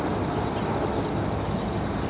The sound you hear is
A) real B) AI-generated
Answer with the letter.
A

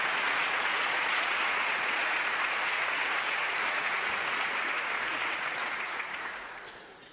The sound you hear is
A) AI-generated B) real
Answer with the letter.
A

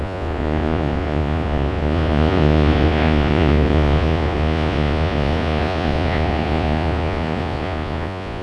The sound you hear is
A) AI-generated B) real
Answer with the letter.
A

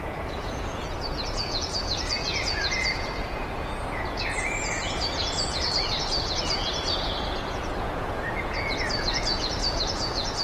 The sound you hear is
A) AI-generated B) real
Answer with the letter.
A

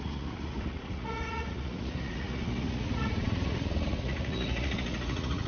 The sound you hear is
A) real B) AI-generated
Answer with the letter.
B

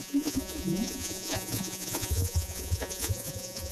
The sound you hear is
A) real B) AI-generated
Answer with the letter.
B